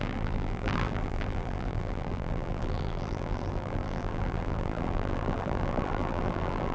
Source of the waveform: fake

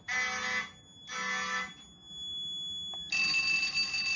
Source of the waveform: real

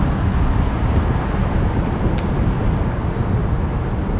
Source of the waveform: real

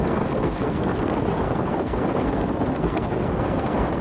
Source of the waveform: fake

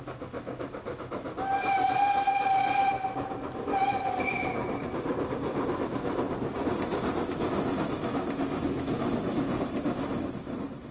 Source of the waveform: real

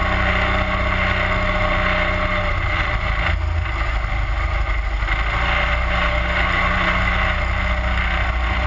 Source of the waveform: real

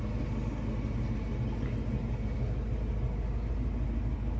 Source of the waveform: real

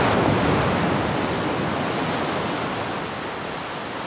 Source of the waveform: real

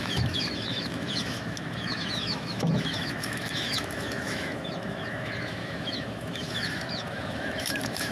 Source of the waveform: fake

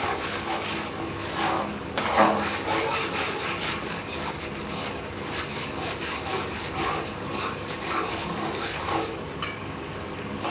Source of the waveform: fake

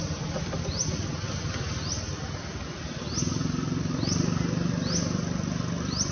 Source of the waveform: real